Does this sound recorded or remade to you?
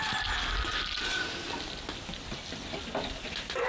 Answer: recorded